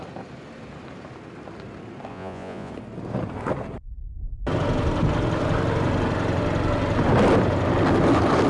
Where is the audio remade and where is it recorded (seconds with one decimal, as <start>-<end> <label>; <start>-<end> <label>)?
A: 0.0-2.1 recorded; 2.1-2.7 remade; 2.7-8.5 recorded